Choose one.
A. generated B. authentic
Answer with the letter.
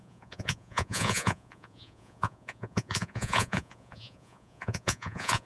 A